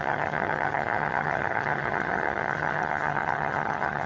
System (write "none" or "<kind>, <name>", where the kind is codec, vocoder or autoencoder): vocoder, HiFi-GAN